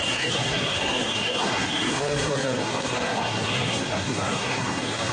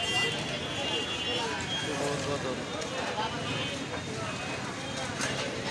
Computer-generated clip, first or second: first